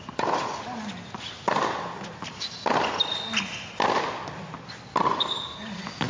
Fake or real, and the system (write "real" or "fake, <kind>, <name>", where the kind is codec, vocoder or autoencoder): real